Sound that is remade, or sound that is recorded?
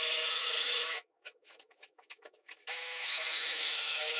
remade